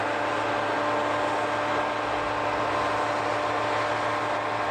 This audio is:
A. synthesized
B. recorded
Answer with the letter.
B